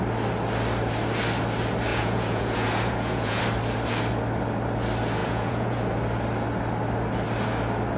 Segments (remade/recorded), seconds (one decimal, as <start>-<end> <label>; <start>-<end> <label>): 0.0-1.9 recorded; 1.9-3.4 remade; 3.4-5.2 recorded; 5.2-5.8 remade; 5.8-8.0 recorded